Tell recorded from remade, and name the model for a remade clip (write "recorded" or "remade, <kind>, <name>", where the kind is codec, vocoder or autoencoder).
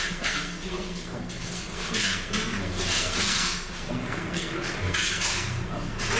remade, codec, SNAC